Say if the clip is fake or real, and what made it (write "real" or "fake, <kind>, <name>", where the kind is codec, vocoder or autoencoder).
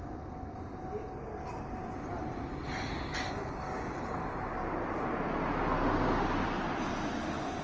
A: real